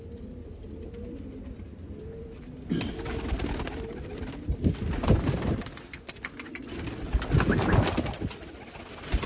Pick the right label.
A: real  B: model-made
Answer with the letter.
A